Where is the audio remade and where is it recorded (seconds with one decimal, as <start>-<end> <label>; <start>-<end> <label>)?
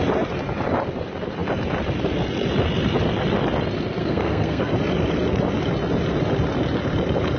0.0-4.0 recorded; 4.0-4.7 remade; 4.7-7.4 recorded